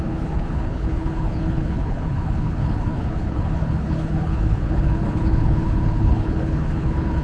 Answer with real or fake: fake